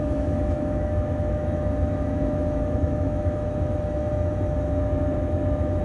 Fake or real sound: fake